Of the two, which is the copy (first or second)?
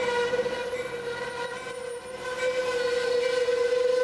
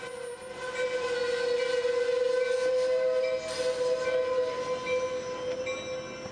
first